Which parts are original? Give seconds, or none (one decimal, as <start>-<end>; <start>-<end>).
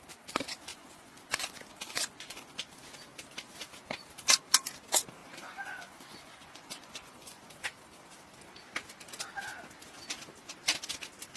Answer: 0.0-0.7; 2.7-5.2; 7.5-11.4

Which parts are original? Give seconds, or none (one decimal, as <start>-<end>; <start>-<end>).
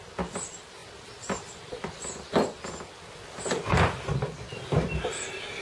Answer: 0.0-5.6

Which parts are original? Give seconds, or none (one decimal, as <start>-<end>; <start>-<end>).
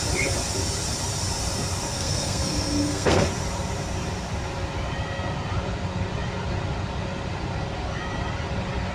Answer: 0.0-1.9; 3.2-8.9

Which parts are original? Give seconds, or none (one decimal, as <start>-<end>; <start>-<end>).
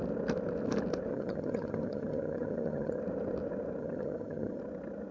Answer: 0.0-1.1; 3.0-3.8; 4.6-5.1